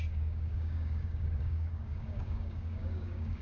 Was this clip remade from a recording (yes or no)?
yes